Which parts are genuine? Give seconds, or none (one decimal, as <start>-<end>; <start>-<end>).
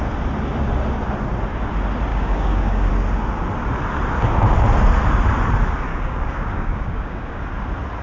0.0-2.1; 2.9-5.9; 7.4-8.0